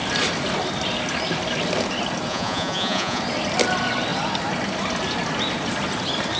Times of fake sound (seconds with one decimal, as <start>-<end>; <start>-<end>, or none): 2.3-3.2

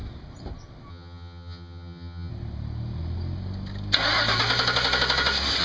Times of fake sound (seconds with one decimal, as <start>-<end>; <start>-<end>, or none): 0.9-2.3

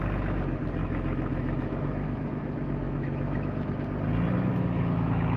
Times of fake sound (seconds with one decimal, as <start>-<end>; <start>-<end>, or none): 0.8-3.7; 4.5-5.4

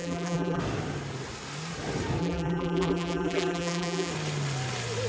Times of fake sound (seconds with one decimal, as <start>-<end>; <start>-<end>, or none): 0.0-0.6; 2.2-4.1

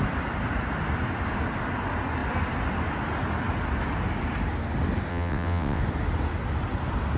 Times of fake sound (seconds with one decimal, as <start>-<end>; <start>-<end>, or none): 5.1-5.8